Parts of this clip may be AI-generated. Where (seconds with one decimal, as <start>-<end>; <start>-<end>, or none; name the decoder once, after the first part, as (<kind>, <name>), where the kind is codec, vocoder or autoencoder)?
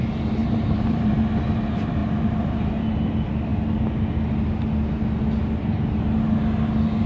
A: 0.4-1.2 (vocoder, BigVGAN v2); 2.0-2.8